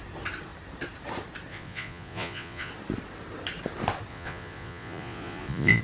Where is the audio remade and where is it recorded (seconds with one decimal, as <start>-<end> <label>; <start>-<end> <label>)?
0.0-1.5 recorded; 1.5-2.7 remade; 2.7-4.1 recorded; 4.1-5.8 remade